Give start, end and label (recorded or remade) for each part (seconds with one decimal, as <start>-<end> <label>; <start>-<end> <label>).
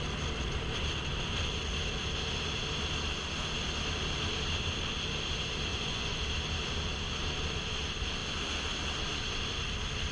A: 0.0-5.7 recorded; 5.7-6.2 remade; 6.2-10.1 recorded